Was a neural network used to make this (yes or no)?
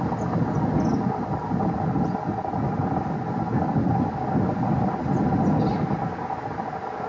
no